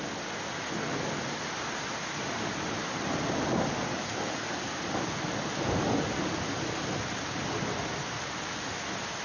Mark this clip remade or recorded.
recorded